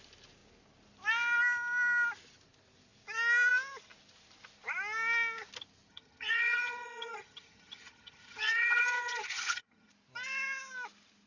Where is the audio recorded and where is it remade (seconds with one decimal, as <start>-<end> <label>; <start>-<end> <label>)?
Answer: 0.0-5.9 recorded; 5.9-9.9 remade; 9.9-11.3 recorded